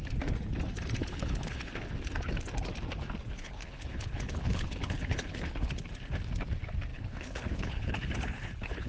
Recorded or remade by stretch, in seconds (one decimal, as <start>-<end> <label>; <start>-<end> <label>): 0.0-1.0 recorded; 1.0-1.7 remade; 1.7-3.4 recorded; 3.4-5.9 remade; 5.9-6.9 recorded; 6.9-8.9 remade